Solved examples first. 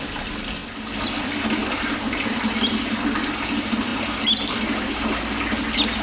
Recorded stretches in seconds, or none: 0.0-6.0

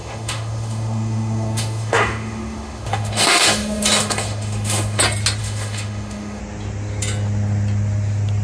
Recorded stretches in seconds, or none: 5.0-5.4; 6.4-8.4

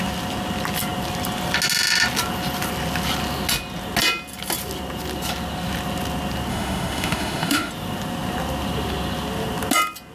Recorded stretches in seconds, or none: 0.0-6.5; 7.7-10.1

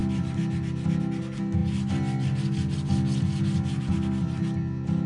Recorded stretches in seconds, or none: 0.0-5.1

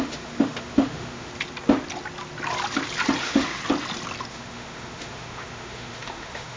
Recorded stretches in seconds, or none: 1.3-3.2; 3.6-4.3

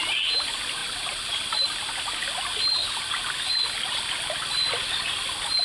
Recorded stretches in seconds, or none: 0.0-5.6

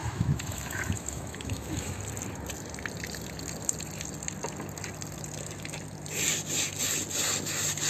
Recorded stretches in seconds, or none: 2.0-7.9